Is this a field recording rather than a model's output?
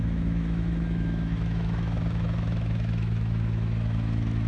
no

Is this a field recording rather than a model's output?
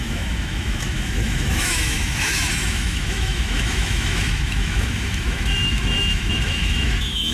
no